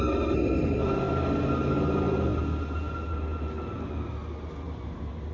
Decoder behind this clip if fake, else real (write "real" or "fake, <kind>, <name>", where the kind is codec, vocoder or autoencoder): real